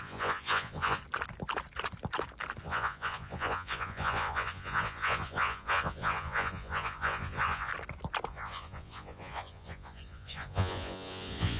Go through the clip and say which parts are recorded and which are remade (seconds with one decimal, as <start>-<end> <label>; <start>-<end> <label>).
0.0-1.0 remade; 1.0-2.6 recorded; 2.6-7.7 remade; 7.7-8.3 recorded; 8.3-11.6 remade